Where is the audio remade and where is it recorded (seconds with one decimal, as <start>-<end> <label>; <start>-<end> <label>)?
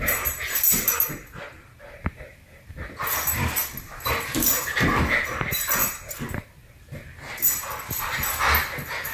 0.0-5.8 recorded; 5.8-6.8 remade; 6.8-9.1 recorded